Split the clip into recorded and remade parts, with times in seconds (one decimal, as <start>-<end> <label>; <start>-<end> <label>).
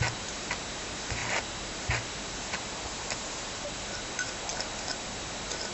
0.0-5.7 recorded